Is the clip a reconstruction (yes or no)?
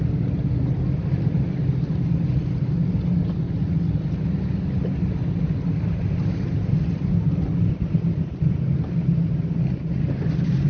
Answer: no